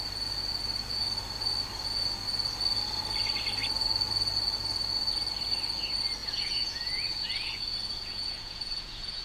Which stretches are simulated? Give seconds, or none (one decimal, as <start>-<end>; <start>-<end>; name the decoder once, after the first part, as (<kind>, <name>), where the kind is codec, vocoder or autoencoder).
6.2-9.2 (vocoder, Vocos)